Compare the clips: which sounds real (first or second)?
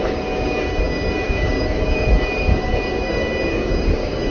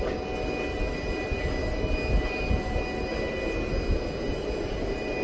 second